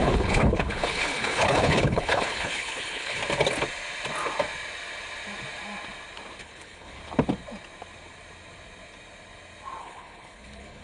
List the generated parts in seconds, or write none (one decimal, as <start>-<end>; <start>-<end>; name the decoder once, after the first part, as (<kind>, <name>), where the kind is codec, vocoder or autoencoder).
0.0-3.2 (codec, HILCodec); 6.4-7.0; 9.8-10.8